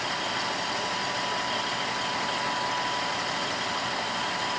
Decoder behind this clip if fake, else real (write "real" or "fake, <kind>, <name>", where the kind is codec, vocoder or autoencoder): real